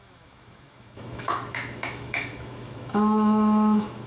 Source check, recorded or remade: remade